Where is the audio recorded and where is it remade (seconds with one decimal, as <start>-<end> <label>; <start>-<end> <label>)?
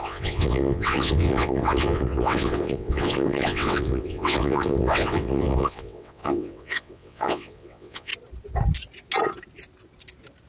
0.0-8.1 remade; 8.1-10.5 recorded